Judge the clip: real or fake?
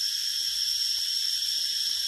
real